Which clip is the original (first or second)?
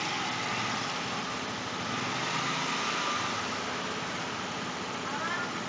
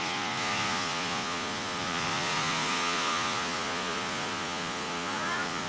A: first